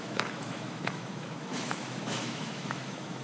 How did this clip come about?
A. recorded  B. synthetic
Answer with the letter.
B